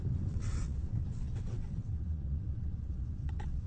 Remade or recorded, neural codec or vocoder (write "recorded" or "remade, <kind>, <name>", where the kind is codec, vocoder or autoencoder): remade, vocoder, WaveNeXt